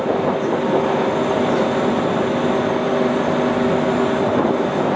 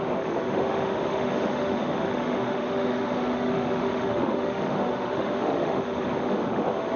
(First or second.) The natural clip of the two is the first